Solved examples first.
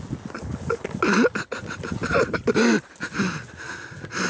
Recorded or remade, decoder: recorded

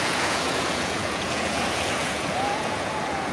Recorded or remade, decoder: remade, vocoder, Vocos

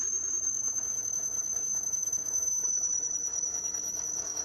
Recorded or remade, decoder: remade, autoencoder, DAC-VAE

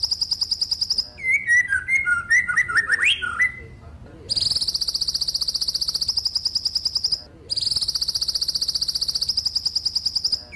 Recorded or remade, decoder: recorded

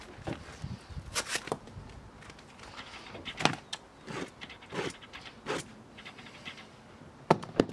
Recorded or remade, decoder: recorded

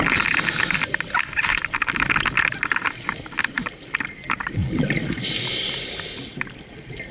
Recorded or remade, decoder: remade, vocoder, BigVGAN v2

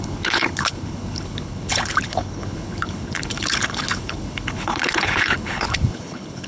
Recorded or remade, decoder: remade, codec, HILCodec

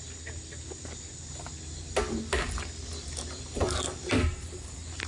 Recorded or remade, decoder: recorded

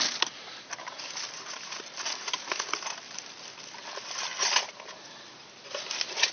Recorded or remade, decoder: recorded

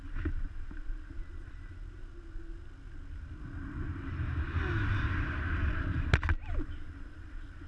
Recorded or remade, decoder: recorded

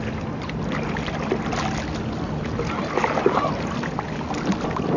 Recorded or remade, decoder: recorded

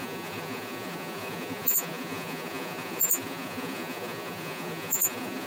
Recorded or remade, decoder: remade, vocoder, Vocos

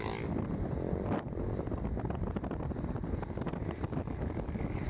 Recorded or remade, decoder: recorded